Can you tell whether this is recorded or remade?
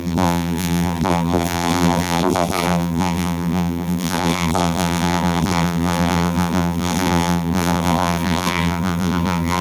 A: remade